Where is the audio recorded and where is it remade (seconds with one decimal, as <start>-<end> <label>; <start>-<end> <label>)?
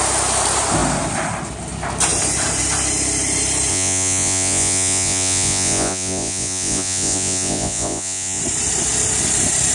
0.0-3.7 recorded; 3.7-8.4 remade; 8.4-9.7 recorded